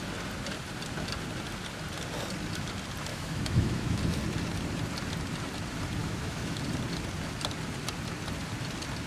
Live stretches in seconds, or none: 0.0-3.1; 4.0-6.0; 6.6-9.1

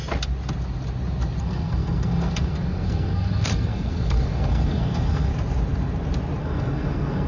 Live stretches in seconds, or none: 0.0-1.4; 5.3-6.4

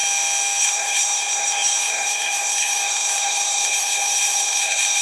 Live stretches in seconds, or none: 0.0-0.6

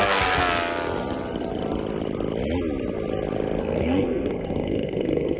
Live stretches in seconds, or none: 0.4-3.6

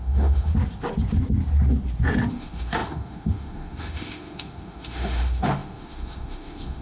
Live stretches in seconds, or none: 0.5-2.3